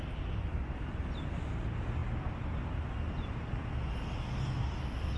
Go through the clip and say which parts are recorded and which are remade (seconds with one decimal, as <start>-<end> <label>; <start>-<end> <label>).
0.0-5.2 recorded